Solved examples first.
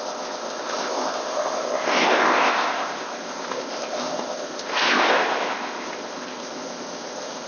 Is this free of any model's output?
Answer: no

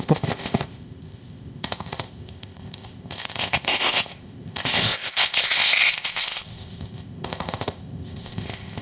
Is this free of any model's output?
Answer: no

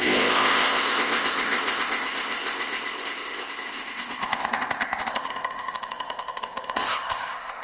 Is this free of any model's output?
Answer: no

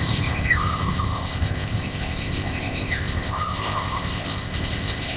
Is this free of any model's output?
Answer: no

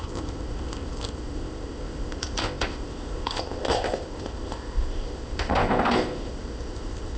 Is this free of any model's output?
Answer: no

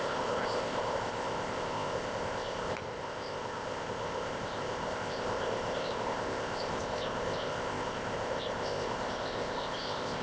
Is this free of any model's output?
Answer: no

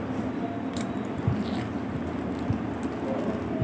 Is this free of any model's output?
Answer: yes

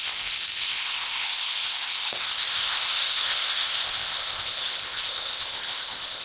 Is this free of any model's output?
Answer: no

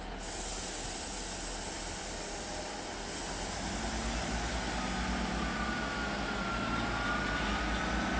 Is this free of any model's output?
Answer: yes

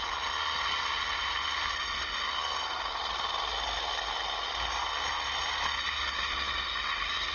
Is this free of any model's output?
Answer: yes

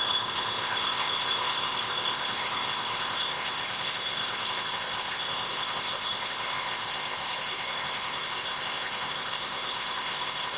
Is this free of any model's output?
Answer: no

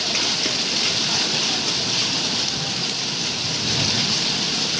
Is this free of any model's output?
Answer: yes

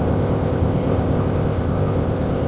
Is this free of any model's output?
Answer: no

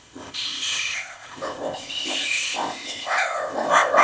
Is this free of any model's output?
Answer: no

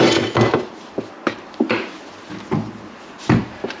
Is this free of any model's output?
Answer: yes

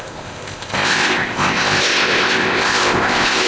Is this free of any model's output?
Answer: no